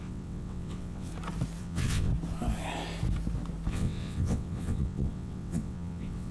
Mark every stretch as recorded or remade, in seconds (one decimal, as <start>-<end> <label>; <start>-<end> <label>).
0.0-1.1 remade; 1.1-1.6 recorded; 1.6-2.1 remade; 2.1-3.7 recorded; 3.7-6.3 remade